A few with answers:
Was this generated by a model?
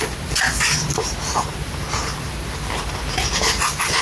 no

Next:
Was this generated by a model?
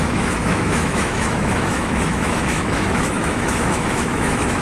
yes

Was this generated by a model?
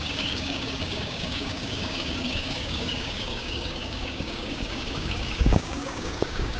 yes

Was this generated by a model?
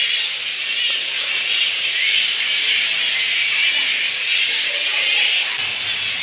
no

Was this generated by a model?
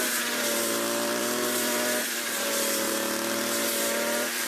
yes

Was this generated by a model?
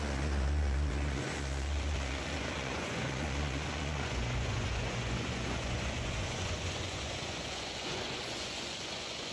yes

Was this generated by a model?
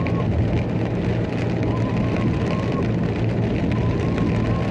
no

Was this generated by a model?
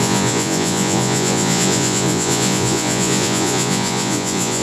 yes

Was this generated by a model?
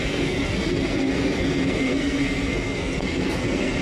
yes